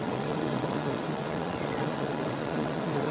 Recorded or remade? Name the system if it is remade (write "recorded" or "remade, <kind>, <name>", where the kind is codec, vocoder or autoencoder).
remade, vocoder, WaveNeXt